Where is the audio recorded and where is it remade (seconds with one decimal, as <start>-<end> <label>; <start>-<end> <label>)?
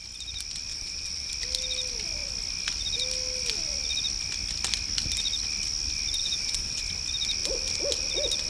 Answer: 0.0-0.7 recorded; 0.7-1.3 remade; 1.3-6.2 recorded; 6.2-6.8 remade; 6.8-8.5 recorded